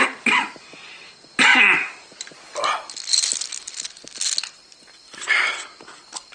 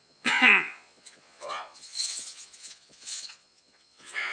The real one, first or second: first